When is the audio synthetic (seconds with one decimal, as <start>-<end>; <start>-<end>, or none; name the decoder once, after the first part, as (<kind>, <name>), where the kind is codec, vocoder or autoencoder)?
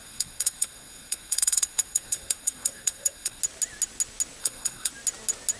0.0-3.4 (codec, SNAC); 4.4-4.9